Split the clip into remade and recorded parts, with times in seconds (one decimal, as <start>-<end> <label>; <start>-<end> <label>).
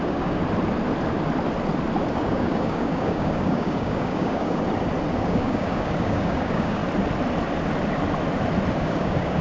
0.0-0.4 remade; 0.4-2.1 recorded; 2.1-4.6 remade; 4.6-5.1 recorded; 5.1-6.8 remade; 6.8-8.8 recorded; 8.8-9.4 remade